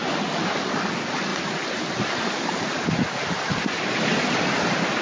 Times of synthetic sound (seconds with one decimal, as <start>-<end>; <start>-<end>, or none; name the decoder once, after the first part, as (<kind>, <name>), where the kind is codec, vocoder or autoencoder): none